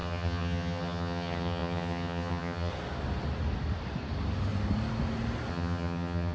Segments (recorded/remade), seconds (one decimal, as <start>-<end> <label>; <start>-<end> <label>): 0.0-2.7 remade; 2.7-5.5 recorded; 5.5-6.3 remade